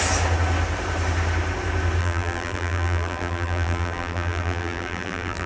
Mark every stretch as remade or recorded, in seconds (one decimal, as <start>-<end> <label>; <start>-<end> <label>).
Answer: 0.0-2.0 recorded; 2.0-5.5 remade